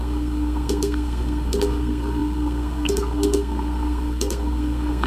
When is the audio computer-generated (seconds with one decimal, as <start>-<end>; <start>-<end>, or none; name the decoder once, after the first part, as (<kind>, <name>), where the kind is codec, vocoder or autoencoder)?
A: 0.0-5.1 (codec, SNAC)